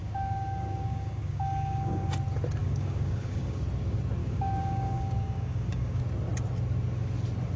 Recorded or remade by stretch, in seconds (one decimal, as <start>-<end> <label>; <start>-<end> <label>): 0.0-2.1 remade; 2.1-2.6 recorded; 2.6-3.6 remade; 3.6-4.2 recorded; 4.2-6.0 remade; 6.0-7.6 recorded